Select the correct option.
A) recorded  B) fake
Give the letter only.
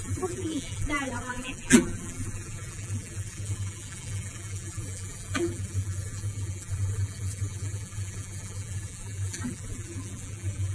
B